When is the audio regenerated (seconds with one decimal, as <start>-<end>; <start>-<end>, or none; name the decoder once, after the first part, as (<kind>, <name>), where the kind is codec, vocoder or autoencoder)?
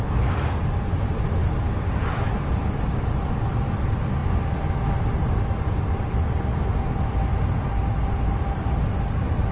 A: 0.0-1.4 (vocoder, BigVGAN v2); 1.9-4.2; 5.0-6.7; 7.8-9.5